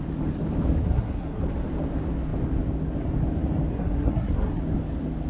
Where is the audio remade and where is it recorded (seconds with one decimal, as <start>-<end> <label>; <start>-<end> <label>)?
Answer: 0.0-0.8 recorded; 0.8-1.4 remade; 1.4-3.7 recorded; 3.7-4.6 remade; 4.6-5.3 recorded